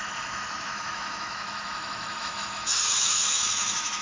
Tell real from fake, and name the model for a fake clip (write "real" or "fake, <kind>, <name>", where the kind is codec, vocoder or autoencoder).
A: fake, autoencoder, DAC-VAE